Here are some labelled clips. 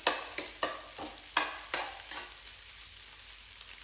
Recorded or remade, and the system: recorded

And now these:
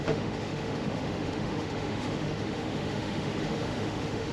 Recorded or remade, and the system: remade, autoencoder, DAC-VAE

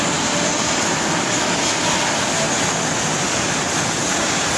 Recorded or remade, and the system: recorded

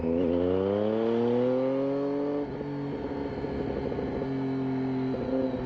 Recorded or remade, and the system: recorded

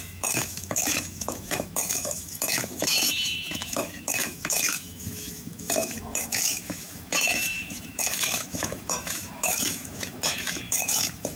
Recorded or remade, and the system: remade, autoencoder, DAC-VAE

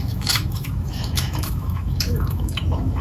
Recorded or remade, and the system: remade, autoencoder, DAC-VAE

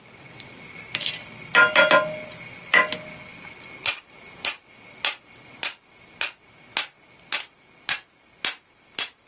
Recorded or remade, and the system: recorded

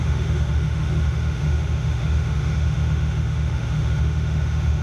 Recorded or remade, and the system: remade, autoencoder, DAC-VAE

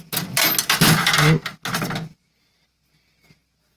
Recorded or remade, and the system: recorded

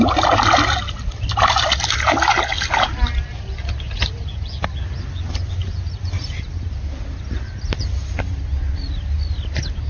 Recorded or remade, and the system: recorded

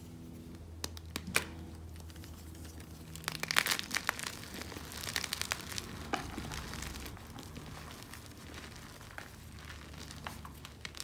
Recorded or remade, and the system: recorded